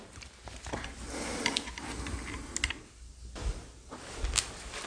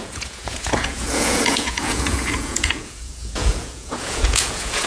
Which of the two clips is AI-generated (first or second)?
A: second